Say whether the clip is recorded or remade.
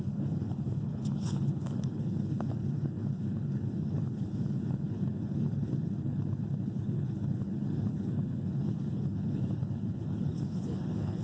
remade